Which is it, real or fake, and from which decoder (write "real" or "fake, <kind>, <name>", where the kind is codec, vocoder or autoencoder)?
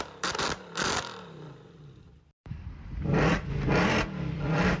fake, vocoder, BigVGAN v2